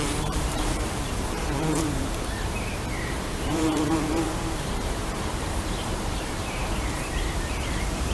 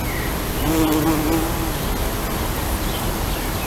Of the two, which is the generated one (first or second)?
first